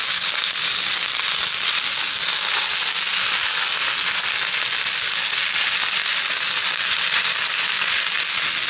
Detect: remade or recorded recorded